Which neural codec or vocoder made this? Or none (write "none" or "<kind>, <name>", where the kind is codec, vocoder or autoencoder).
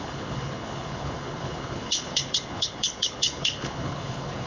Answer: codec, HILCodec